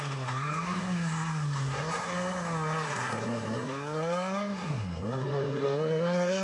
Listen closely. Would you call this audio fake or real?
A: fake